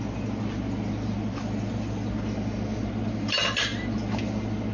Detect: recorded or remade recorded